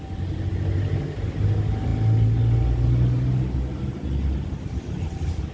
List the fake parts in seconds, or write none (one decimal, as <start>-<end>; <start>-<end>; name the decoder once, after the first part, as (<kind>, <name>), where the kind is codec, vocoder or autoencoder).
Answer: none